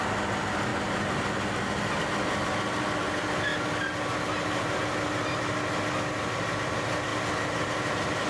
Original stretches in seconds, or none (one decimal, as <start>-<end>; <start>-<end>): 0.0-8.3